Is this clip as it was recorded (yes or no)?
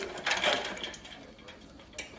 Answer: yes